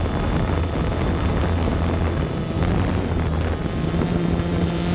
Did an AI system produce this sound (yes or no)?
no